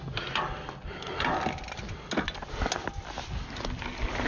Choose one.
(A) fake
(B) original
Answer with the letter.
B